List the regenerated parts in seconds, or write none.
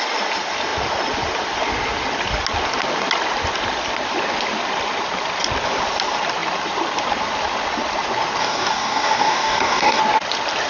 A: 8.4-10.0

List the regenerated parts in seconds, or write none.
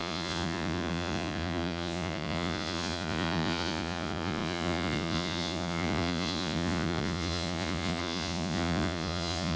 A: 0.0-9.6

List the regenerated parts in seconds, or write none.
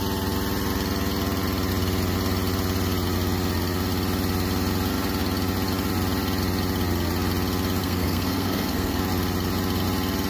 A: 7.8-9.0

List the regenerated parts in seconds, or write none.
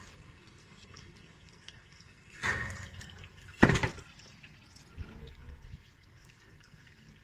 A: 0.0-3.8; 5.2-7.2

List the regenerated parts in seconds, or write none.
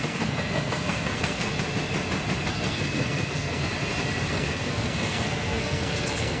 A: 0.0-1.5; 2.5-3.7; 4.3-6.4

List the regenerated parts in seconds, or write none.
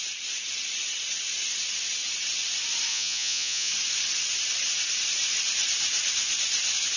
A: 2.9-3.7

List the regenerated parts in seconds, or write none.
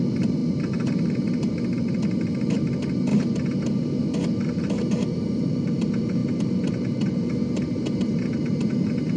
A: 0.0-9.2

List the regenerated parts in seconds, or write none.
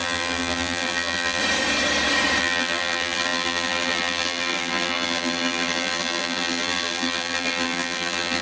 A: 0.0-1.4; 2.4-8.4